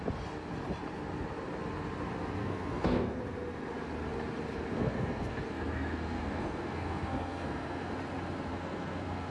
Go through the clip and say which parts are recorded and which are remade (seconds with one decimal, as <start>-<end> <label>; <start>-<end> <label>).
0.0-2.4 recorded; 2.4-3.2 remade; 3.2-4.7 recorded; 4.7-7.9 remade; 7.9-8.5 recorded; 8.5-9.3 remade